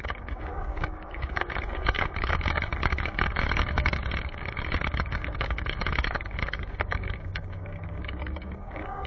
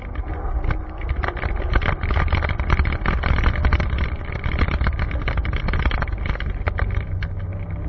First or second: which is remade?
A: first